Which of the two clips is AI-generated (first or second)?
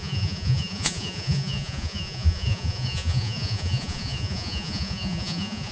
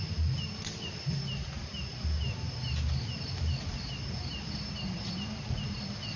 first